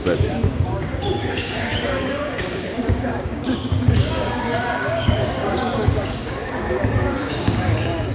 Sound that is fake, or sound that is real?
fake